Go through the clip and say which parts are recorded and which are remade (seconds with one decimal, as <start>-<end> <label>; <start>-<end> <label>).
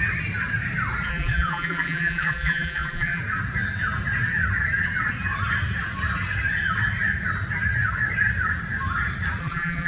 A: 0.0-1.1 recorded; 1.1-3.2 remade; 3.2-9.4 recorded; 9.4-9.9 remade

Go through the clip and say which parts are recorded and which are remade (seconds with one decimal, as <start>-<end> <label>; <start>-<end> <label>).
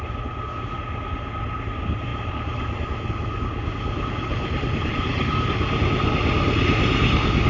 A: 0.0-2.1 recorded; 2.1-3.1 remade; 3.1-4.3 recorded; 4.3-5.6 remade; 5.6-7.5 recorded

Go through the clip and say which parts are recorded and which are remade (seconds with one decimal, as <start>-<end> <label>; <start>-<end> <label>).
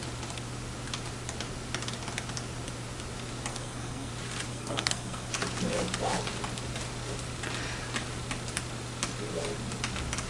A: 0.0-3.5 recorded; 3.5-4.1 remade; 4.1-4.5 recorded; 4.5-5.3 remade; 5.3-10.3 recorded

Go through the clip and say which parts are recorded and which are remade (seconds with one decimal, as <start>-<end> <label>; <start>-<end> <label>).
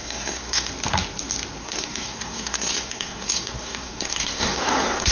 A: 0.0-0.7 remade; 0.7-1.6 recorded; 1.6-5.1 remade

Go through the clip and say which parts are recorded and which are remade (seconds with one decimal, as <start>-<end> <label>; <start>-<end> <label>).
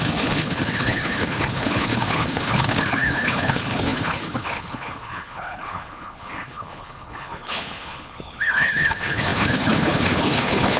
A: 0.0-10.8 remade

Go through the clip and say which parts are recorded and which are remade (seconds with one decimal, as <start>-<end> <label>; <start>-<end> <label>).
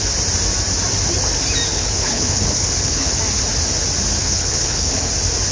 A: 0.0-1.7 recorded; 1.7-3.2 remade; 3.2-4.2 recorded; 4.2-5.1 remade; 5.1-5.5 recorded